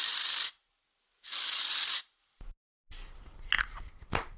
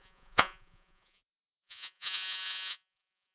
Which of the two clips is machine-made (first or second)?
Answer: second